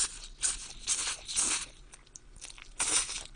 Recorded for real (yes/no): yes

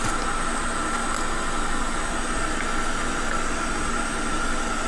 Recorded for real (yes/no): yes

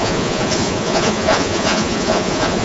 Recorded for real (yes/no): no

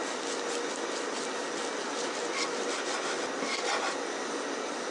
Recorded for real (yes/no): yes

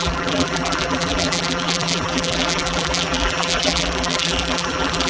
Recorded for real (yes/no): no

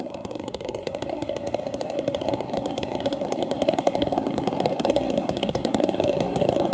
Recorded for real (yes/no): no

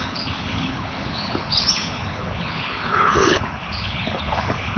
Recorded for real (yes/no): no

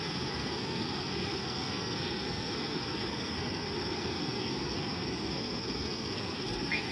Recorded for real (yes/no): no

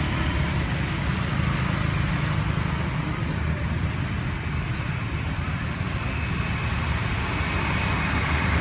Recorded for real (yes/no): yes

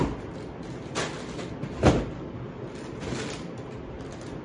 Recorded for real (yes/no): yes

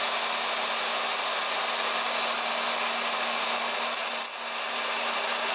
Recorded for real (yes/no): yes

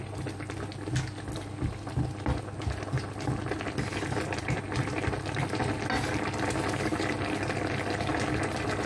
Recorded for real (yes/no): yes